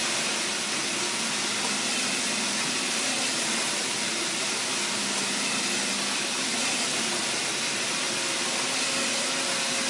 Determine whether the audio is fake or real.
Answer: real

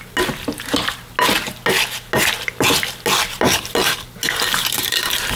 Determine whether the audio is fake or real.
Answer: real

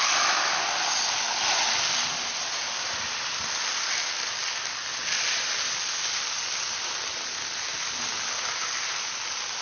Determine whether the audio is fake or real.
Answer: real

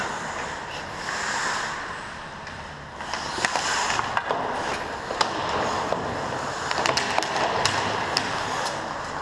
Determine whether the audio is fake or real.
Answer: real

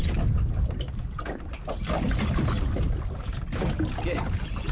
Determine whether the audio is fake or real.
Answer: real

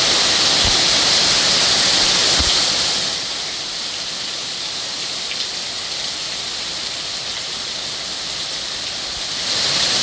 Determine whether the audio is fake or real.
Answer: real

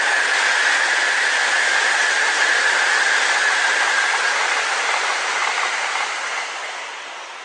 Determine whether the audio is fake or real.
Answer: real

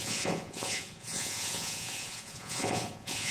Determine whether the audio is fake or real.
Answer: fake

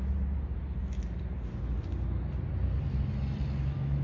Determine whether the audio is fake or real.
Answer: real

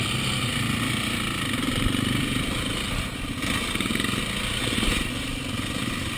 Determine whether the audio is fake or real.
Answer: real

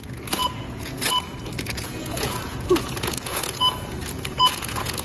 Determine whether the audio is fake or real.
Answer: fake